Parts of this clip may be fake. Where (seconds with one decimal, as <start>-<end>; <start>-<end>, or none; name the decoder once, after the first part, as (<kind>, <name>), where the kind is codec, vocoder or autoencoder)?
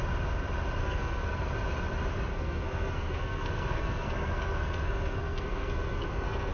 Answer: 0.8-1.5 (codec, SNAC); 2.3-6.5